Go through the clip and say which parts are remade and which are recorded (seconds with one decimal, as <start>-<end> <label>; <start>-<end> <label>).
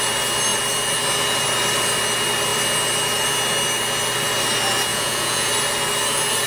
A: 0.0-4.9 recorded; 4.9-5.5 remade; 5.5-6.5 recorded